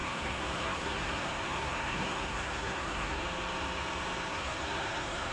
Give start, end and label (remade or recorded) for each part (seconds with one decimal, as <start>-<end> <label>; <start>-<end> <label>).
0.0-3.2 remade; 3.2-4.3 recorded; 4.3-5.3 remade